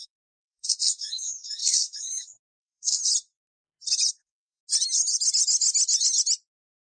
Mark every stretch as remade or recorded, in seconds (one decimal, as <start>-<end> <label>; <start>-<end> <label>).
0.0-3.0 remade; 3.0-4.1 recorded; 4.1-4.6 remade; 4.6-7.0 recorded